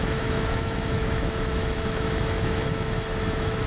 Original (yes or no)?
no